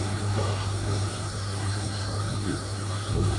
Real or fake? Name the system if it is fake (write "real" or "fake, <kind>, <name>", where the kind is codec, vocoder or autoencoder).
fake, codec, SNAC